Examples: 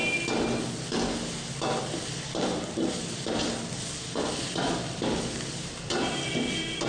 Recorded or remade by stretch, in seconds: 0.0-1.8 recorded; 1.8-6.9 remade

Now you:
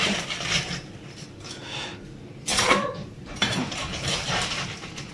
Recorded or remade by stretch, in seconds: 0.0-2.5 recorded; 2.5-5.1 remade

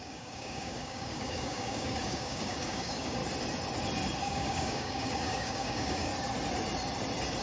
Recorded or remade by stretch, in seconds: 0.0-3.2 remade; 3.2-4.2 recorded; 4.2-6.1 remade; 6.1-7.4 recorded